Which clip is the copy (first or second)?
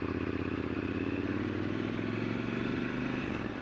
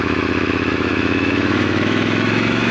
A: second